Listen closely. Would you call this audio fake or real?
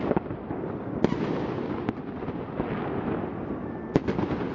real